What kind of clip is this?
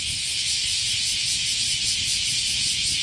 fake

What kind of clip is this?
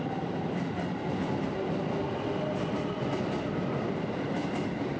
real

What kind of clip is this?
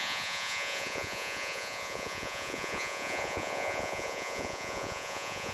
fake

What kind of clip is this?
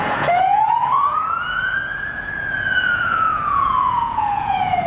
fake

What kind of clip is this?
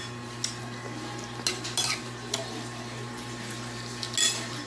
real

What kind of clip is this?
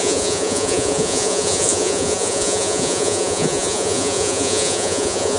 fake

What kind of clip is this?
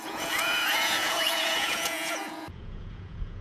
fake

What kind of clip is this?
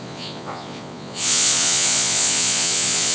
fake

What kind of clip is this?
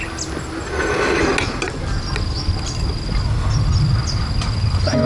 real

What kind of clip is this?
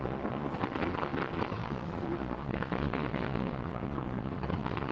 fake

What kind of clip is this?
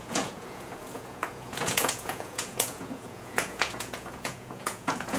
fake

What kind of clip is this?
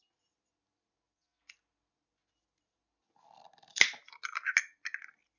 real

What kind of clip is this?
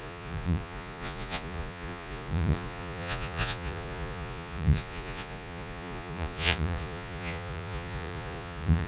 fake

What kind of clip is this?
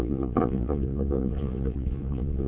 fake